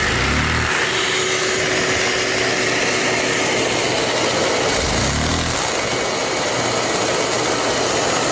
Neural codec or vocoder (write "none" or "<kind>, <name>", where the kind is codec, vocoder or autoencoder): none